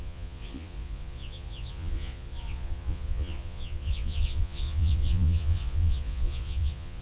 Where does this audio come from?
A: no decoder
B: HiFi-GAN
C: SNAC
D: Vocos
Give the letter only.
D